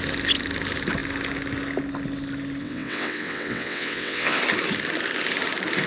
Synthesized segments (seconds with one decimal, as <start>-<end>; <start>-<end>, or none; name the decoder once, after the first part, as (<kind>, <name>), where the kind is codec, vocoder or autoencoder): 2.6-4.4 (vocoder, WaveNeXt)